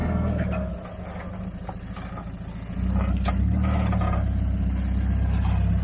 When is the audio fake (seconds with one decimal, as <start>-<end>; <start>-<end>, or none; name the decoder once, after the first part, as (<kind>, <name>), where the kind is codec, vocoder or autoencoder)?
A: 0.0-0.7 (codec, SNAC)